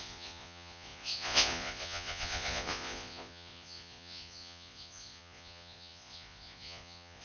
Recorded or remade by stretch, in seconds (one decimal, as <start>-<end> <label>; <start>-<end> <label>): 0.0-7.2 remade